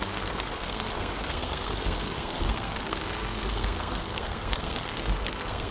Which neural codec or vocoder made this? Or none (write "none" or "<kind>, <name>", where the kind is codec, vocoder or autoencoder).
codec, SNAC